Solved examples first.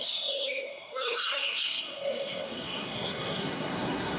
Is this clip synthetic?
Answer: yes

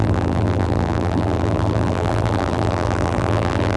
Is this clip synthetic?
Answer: yes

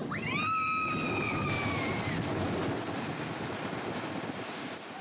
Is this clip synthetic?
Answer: no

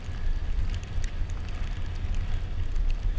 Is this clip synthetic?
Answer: no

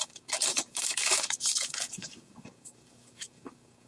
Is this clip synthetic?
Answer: yes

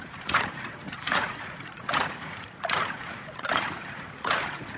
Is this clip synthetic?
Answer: yes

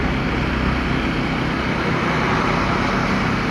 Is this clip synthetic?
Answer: no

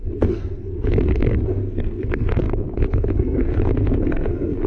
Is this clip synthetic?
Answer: yes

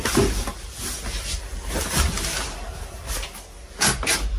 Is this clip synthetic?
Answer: no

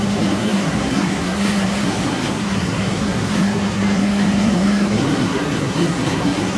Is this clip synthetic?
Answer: yes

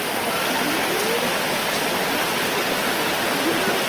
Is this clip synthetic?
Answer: no